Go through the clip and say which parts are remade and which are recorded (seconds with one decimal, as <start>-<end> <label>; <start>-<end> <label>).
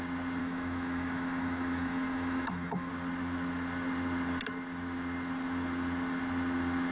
0.0-0.4 recorded; 0.4-2.9 remade; 2.9-6.9 recorded